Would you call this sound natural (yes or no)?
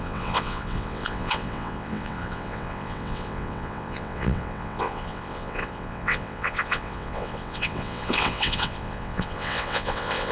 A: no